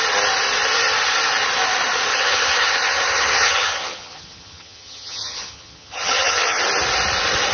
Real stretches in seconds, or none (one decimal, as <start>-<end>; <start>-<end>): 0.0-2.1; 6.6-7.5